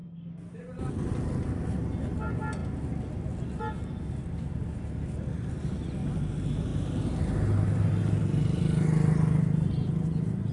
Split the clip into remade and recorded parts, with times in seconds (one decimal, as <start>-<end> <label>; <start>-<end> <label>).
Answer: 0.0-10.5 recorded